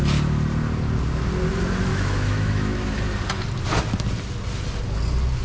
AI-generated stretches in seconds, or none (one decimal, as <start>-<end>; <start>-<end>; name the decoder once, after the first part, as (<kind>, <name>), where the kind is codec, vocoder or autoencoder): 1.9-3.0 (autoencoder, DAC-VAE)